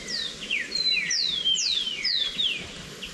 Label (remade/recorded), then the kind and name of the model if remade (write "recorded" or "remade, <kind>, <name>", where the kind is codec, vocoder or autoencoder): recorded